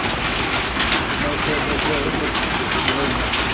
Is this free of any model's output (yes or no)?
yes